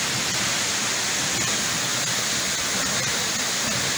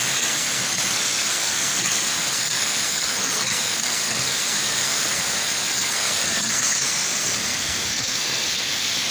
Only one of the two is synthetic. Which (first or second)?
second